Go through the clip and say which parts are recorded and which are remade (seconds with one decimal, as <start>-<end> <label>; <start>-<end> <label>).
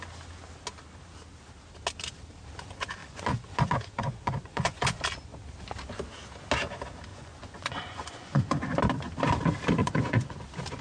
0.0-3.0 recorded; 3.0-4.8 remade; 4.8-7.1 recorded; 7.1-8.6 remade; 8.6-9.8 recorded; 9.8-10.4 remade; 10.4-10.8 recorded